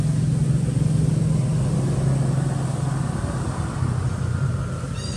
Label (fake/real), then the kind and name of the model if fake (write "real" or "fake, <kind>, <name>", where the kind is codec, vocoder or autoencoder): real